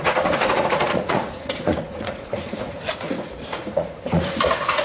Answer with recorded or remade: remade